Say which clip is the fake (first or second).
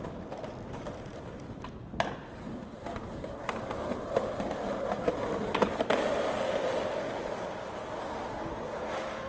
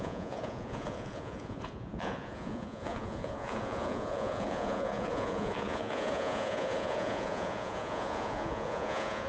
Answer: second